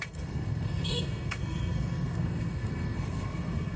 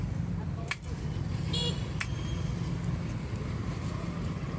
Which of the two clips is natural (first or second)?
second